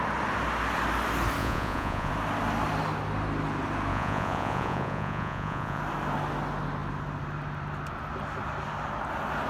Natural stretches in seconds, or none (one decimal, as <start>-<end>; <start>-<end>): 0.0-1.4; 2.1-3.9; 5.8-9.5